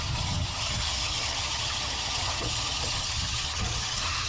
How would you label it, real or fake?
fake